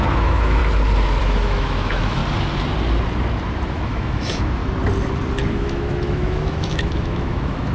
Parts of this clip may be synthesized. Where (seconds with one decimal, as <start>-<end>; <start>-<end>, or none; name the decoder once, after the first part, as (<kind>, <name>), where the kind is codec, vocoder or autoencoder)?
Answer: 0.0-0.6 (autoencoder, DAC-VAE); 1.2-2.2; 3.7-4.6; 5.5-7.7